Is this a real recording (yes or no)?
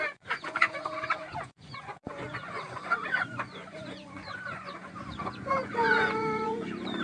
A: no